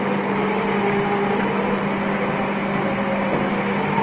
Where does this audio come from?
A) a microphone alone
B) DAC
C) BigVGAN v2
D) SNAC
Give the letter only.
A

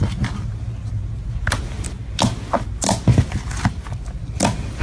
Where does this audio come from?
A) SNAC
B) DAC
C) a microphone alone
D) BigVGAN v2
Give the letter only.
C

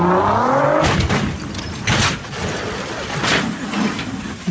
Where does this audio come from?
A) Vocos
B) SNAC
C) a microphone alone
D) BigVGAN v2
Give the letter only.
C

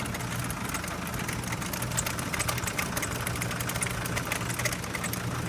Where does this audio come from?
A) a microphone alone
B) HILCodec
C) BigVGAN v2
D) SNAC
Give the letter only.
A